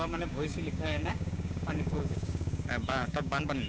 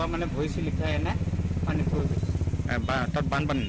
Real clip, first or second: second